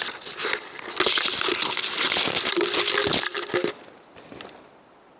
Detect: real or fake real